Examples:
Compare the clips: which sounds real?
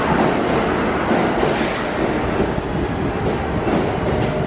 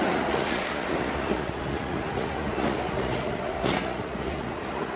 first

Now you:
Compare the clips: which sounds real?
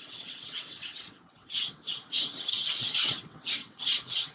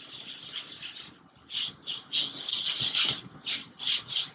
second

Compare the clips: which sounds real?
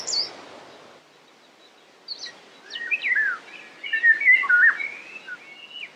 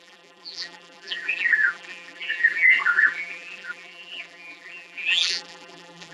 first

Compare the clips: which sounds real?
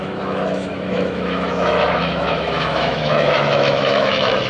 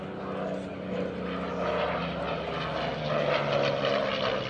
second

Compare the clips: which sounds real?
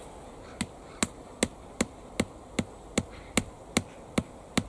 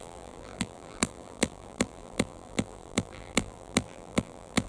first